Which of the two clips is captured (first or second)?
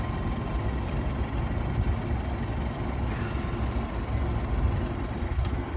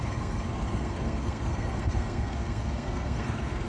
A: first